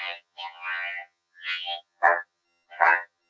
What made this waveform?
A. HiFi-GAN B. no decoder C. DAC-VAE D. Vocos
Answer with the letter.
A